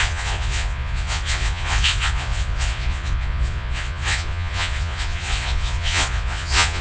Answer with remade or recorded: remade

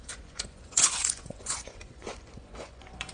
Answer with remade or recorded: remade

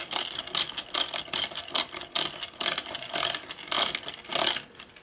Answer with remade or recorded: recorded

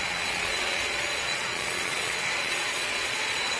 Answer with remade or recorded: remade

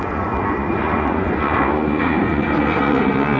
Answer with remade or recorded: remade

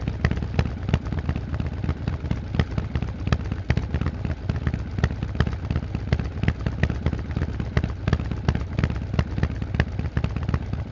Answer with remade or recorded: recorded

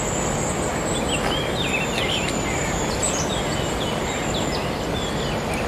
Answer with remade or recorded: recorded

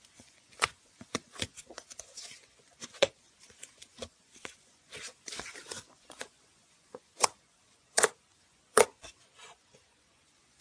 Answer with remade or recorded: remade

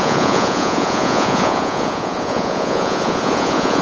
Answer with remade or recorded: remade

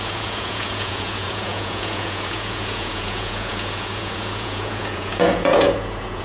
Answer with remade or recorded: remade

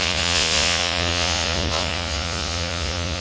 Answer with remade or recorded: remade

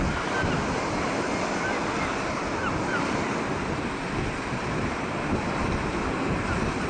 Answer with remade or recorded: recorded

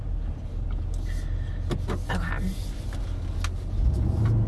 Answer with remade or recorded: recorded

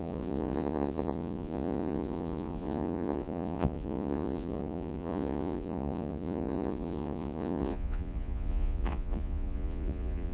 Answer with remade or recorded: remade